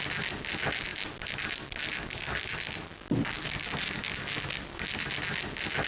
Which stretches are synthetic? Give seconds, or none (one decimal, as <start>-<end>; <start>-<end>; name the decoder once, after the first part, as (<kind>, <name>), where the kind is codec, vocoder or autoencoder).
none